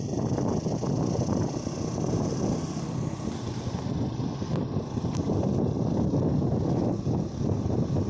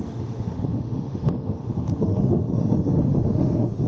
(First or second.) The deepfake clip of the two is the second